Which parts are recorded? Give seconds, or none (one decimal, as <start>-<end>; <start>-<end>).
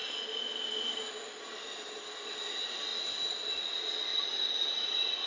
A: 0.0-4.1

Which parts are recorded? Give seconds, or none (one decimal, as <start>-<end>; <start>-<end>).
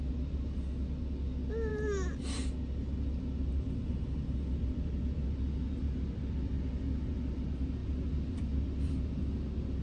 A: 0.0-9.8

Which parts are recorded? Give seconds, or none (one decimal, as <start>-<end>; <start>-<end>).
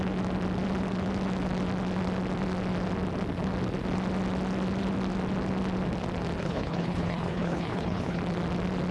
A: 0.0-6.4; 8.2-8.9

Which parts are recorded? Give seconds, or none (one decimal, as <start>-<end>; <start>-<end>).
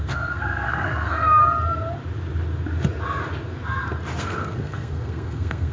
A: 1.4-4.2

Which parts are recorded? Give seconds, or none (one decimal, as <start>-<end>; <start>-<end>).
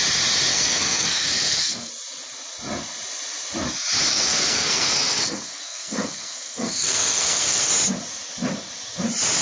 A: 0.0-0.5; 1.9-4.1; 7.7-9.4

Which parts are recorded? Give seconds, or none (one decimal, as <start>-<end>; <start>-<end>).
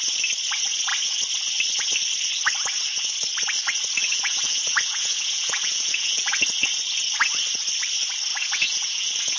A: 0.0-4.0; 6.4-8.3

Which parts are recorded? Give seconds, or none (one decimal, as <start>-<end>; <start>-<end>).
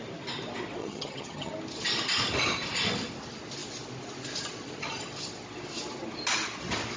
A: 0.0-0.8; 1.5-7.0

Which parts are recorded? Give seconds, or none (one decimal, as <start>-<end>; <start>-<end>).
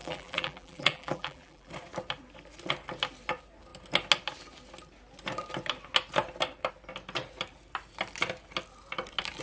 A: 1.7-9.4